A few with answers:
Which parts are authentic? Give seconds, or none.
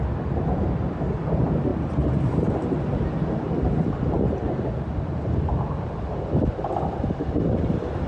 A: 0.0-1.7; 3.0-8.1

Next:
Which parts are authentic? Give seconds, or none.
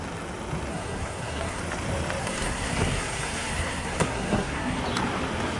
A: 0.0-0.7; 1.6-2.2; 4.8-5.6